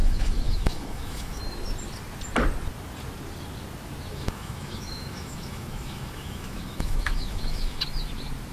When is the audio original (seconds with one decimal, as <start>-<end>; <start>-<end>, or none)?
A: 1.4-4.1; 7.8-8.5